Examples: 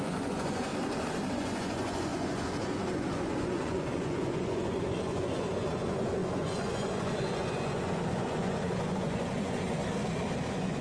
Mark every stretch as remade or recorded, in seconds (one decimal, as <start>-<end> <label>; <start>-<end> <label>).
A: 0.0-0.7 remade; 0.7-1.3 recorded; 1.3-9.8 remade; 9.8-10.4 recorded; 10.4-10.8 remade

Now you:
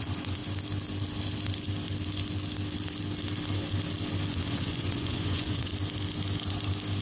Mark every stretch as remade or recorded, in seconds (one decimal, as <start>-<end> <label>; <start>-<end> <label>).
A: 0.0-0.4 remade; 0.4-4.3 recorded; 4.3-5.7 remade; 5.7-7.0 recorded

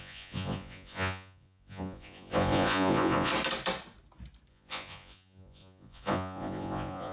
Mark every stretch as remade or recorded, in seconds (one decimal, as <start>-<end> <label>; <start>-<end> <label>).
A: 0.0-3.3 remade; 3.3-4.5 recorded; 4.5-7.1 remade

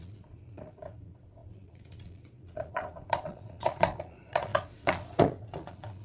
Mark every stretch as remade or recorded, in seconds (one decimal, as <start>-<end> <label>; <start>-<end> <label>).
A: 0.0-6.0 remade

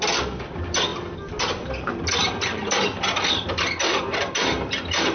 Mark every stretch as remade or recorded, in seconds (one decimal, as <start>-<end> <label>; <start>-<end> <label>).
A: 0.0-5.1 recorded

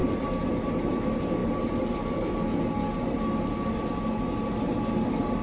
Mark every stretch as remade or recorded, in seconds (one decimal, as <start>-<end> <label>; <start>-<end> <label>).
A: 0.0-5.4 recorded

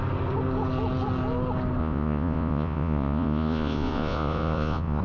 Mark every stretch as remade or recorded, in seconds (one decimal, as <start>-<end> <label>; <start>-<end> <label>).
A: 0.0-1.8 recorded; 1.8-5.0 remade